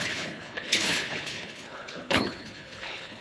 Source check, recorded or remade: remade